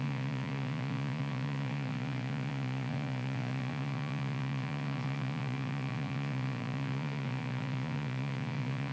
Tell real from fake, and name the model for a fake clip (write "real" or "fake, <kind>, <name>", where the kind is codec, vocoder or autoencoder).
fake, vocoder, Vocos